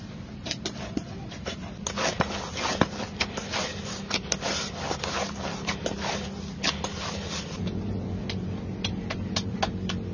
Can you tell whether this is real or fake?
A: fake